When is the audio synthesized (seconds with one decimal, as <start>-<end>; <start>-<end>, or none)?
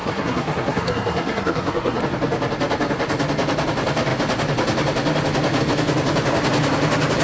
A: 0.0-2.0